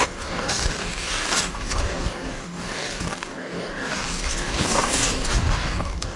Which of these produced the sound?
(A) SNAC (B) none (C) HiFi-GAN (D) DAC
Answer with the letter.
D